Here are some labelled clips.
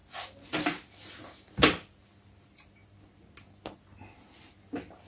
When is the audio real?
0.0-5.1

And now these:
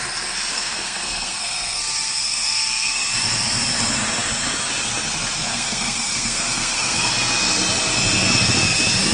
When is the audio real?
0.0-0.5; 3.1-5.5; 7.1-9.1

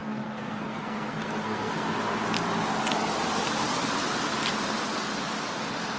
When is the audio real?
1.9-6.0

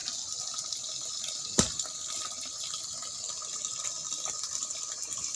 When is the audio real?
0.0-5.3

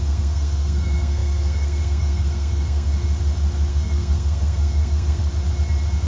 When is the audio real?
2.9-3.7; 5.2-6.1

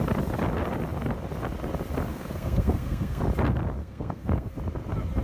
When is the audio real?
0.0-2.1; 3.2-3.8; 4.5-5.2

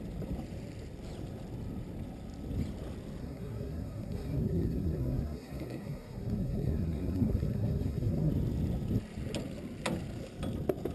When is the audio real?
0.0-3.2; 8.3-10.9